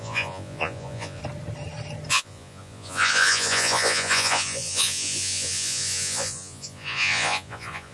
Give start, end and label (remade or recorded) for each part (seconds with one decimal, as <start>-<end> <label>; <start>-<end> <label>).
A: 0.0-1.2 remade; 1.2-2.1 recorded; 2.1-7.9 remade